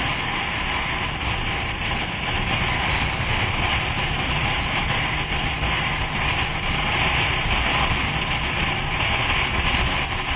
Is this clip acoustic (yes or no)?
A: yes